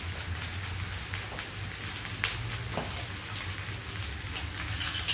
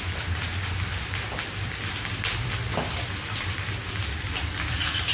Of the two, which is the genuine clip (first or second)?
first